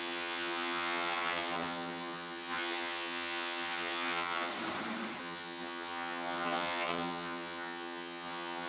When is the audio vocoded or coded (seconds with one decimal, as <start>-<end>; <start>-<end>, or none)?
0.0-4.5; 5.2-8.7